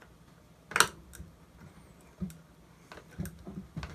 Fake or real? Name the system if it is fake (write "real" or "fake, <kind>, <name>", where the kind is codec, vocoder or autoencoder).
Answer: real